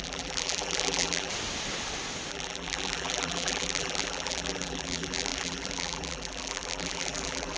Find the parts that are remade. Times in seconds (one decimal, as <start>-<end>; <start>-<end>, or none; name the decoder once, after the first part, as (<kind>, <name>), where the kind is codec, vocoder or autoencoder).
0.0-1.3 (vocoder, BigVGAN v2); 2.3-7.6